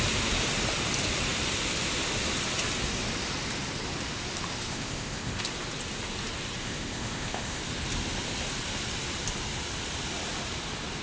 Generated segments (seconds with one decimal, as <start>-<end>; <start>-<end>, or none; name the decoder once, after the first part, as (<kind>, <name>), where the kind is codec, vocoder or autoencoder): 4.7-5.4 (codec, ZipCodec); 6.6-7.6